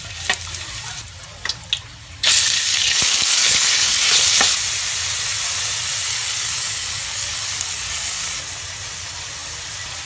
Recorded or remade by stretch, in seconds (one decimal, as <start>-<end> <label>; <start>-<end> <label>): 0.0-2.7 recorded; 2.7-4.0 remade; 4.0-6.1 recorded; 6.1-8.4 remade; 8.4-10.1 recorded